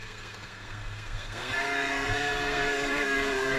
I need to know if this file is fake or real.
fake